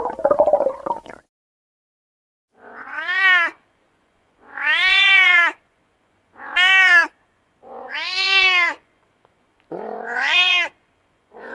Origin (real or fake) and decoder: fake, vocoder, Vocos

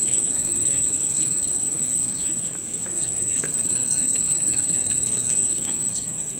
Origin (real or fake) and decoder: fake, codec, SNAC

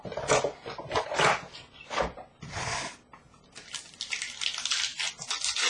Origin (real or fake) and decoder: real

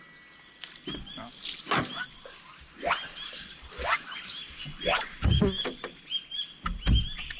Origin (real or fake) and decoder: real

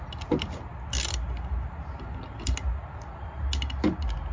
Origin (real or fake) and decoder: real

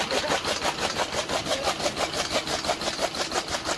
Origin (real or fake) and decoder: real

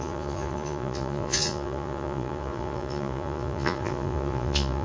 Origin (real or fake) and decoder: fake, vocoder, Vocos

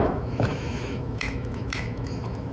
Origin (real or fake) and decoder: fake, autoencoder, DAC-VAE